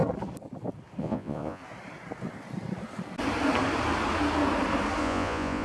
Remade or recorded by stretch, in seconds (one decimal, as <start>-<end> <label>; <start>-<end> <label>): 0.0-1.0 recorded; 1.0-1.6 remade; 1.6-5.0 recorded; 5.0-5.6 remade